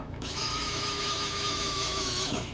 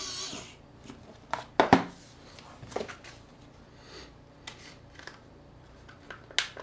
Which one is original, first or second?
second